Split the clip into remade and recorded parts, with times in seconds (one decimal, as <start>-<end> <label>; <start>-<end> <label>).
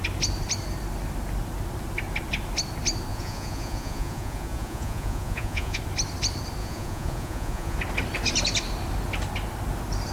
0.0-3.1 recorded; 3.1-5.8 remade; 5.8-6.6 recorded; 6.6-7.8 remade; 7.8-10.1 recorded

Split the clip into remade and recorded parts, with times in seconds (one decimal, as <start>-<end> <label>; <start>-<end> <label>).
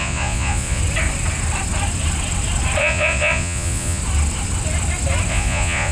0.0-0.8 remade; 0.8-2.8 recorded; 2.8-4.0 remade; 4.0-5.3 recorded; 5.3-5.9 remade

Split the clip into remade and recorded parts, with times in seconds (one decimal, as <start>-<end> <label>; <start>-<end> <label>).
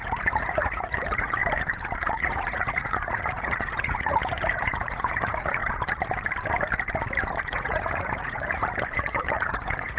0.0-1.4 remade; 1.4-2.0 recorded; 2.0-5.6 remade; 5.6-7.4 recorded; 7.4-10.0 remade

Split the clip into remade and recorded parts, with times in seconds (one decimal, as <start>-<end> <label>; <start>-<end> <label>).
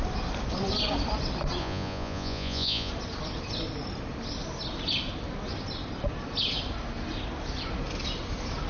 0.0-1.6 recorded; 1.6-2.9 remade; 2.9-8.7 recorded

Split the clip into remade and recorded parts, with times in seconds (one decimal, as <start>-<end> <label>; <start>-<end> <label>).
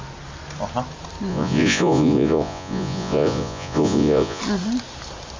0.0-1.3 recorded; 1.3-4.4 remade; 4.4-5.4 recorded